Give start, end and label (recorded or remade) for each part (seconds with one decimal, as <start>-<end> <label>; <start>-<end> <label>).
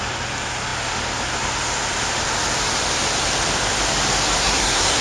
0.0-4.4 recorded; 4.4-5.0 remade